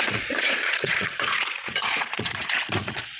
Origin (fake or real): fake